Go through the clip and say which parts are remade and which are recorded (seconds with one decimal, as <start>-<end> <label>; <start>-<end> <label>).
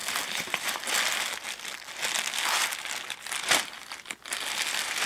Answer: 0.0-5.1 recorded